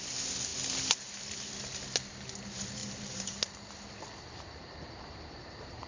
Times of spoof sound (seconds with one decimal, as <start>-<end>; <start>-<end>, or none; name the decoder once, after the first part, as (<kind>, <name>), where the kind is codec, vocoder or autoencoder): 2.8-3.4 (vocoder, BigVGAN v2); 4.6-5.9